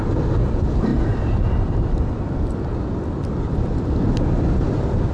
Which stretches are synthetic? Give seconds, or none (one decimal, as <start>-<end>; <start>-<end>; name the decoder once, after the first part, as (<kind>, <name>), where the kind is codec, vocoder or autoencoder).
none